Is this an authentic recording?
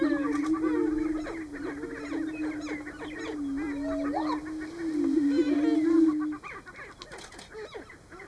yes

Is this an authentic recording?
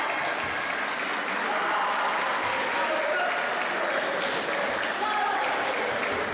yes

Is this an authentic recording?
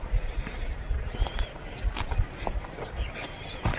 yes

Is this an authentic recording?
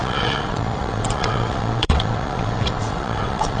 no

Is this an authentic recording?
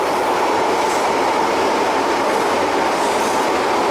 yes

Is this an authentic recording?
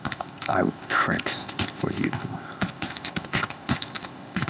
no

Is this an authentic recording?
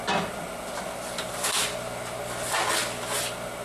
yes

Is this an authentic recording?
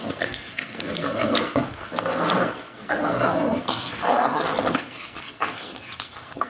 no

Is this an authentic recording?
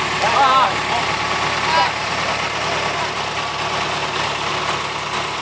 yes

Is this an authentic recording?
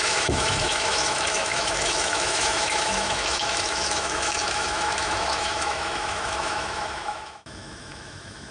no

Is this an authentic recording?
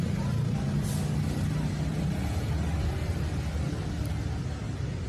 yes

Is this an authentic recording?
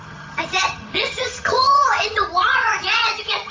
no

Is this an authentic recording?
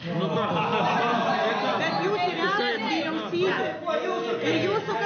yes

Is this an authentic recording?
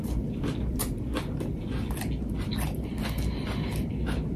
yes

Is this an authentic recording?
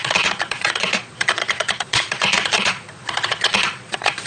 no